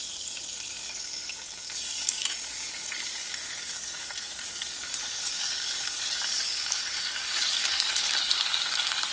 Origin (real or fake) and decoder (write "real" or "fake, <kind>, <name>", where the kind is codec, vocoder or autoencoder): fake, codec, DAC